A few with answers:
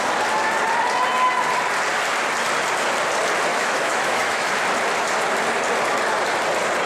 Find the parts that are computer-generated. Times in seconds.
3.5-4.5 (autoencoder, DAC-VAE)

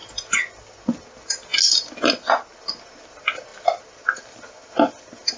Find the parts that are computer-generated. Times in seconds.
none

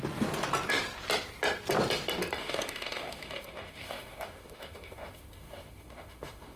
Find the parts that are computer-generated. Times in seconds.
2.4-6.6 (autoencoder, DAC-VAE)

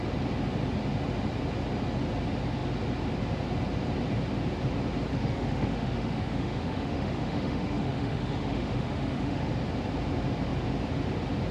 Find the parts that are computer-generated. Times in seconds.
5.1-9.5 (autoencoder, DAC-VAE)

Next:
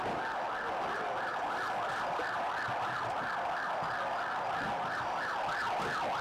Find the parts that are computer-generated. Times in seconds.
none

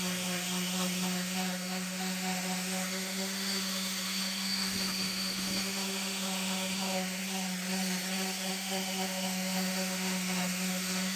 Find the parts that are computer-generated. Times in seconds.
0.0-7.2 (autoencoder, DAC-VAE); 8.5-11.2